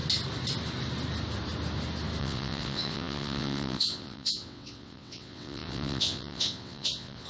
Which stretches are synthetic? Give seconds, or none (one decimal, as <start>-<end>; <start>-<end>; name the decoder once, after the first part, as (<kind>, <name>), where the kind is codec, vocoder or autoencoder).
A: 2.2-7.3 (vocoder, WaveNeXt)